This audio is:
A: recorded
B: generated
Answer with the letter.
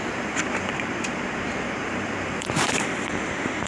B